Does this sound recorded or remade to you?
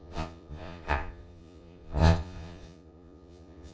remade